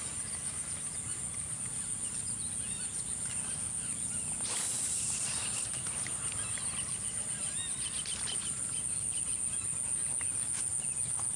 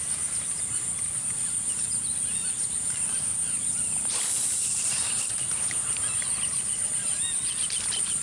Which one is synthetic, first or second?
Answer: second